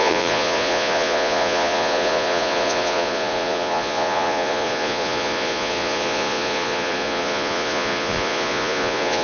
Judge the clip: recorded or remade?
remade